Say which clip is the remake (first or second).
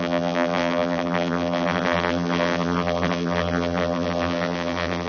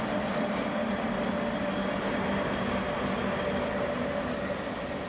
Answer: first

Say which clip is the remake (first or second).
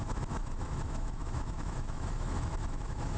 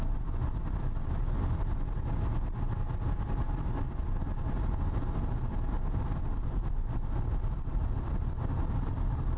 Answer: first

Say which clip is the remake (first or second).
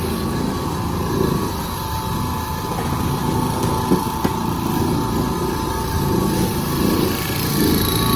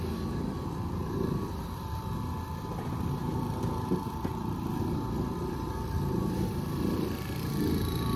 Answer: second